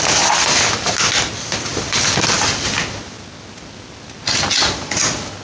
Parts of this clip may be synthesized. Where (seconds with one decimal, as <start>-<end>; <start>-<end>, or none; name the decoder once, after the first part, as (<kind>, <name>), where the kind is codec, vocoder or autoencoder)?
none